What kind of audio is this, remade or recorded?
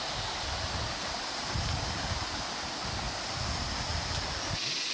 recorded